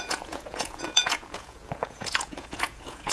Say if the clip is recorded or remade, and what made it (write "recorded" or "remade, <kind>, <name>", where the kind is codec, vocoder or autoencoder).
remade, vocoder, Vocos